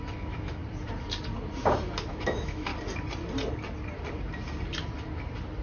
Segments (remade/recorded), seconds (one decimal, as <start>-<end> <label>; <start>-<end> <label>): 0.0-0.6 remade; 0.6-2.1 recorded; 2.1-2.7 remade; 2.7-5.6 recorded